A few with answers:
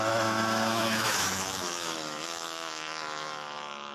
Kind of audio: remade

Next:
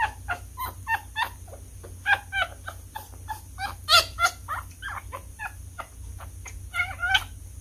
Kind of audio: recorded